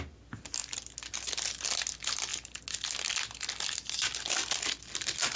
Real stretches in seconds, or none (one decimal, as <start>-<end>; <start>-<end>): 0.0-5.4